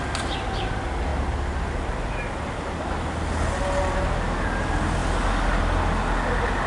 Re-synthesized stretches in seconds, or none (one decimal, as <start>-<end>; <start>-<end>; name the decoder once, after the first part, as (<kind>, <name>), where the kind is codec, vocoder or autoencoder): none